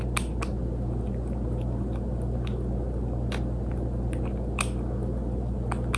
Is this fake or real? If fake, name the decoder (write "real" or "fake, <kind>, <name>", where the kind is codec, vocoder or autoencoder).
real